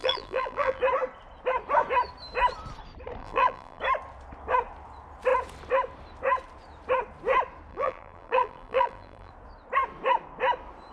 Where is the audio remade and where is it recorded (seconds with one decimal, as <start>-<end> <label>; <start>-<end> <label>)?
0.0-0.8 remade; 0.8-3.2 recorded; 3.2-3.8 remade; 3.8-7.7 recorded; 7.7-9.3 remade; 9.3-10.9 recorded